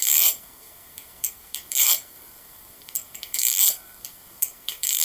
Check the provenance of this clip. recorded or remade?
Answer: remade